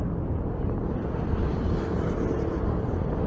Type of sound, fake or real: real